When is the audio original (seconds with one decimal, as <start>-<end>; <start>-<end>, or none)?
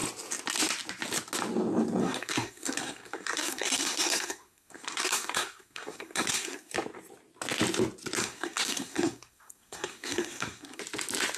0.0-2.0; 6.7-8.2; 10.8-11.4